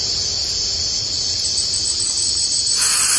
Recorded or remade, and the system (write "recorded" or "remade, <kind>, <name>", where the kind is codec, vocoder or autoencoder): recorded